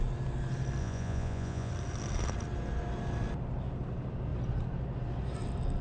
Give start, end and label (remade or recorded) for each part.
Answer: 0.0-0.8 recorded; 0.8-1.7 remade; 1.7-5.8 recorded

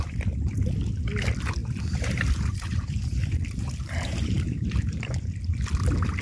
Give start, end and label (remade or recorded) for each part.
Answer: 0.0-1.6 recorded; 1.6-5.3 remade; 5.3-6.2 recorded

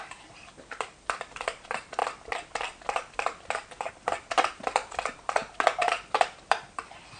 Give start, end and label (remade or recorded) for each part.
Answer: 0.0-2.0 remade; 2.0-3.9 recorded; 3.9-5.4 remade; 5.4-5.9 recorded; 5.9-7.2 remade

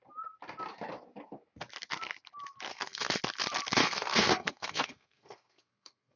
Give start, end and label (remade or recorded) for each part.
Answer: 0.0-2.7 recorded; 2.7-3.2 remade; 3.2-3.8 recorded; 3.8-6.2 remade

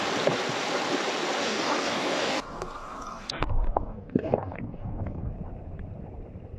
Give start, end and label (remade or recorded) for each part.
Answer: 0.0-1.4 recorded; 1.4-5.3 remade; 5.3-6.6 recorded

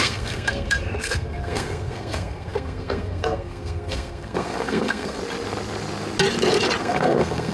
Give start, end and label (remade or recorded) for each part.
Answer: 0.0-5.2 remade; 5.2-6.8 recorded; 6.8-7.5 remade